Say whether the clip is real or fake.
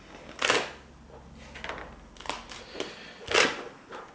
real